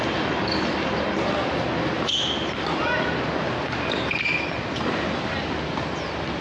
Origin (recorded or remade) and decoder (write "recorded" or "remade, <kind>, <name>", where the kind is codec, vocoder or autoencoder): recorded